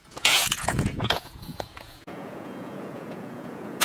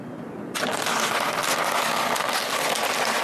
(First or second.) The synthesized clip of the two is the first